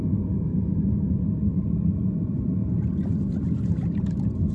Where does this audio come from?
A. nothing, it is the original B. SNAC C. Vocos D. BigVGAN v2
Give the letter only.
A